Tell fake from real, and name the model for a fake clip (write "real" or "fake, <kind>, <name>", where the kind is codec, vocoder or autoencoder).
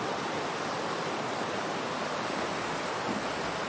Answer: real